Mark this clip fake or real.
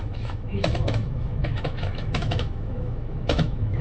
fake